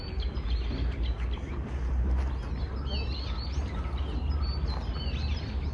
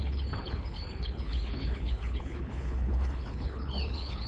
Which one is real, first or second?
first